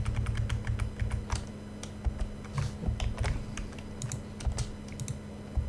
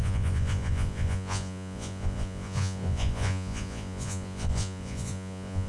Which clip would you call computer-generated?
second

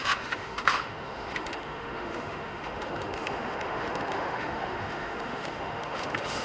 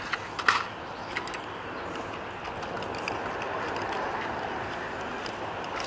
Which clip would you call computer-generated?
first